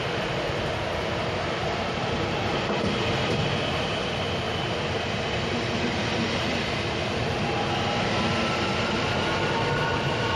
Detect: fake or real real